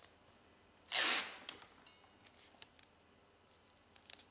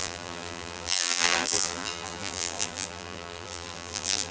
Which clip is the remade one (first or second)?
second